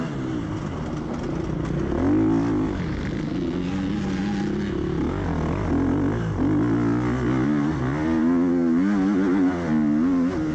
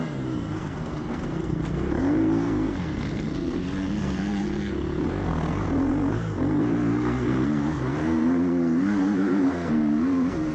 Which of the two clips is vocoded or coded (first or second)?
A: second